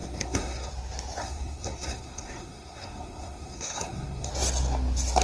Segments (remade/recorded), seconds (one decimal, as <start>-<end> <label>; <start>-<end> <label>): 0.0-0.7 remade; 0.7-1.2 recorded; 1.2-4.3 remade; 4.3-5.2 recorded